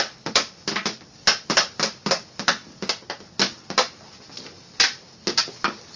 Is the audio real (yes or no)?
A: yes